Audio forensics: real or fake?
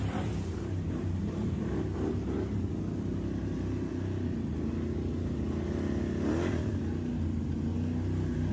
real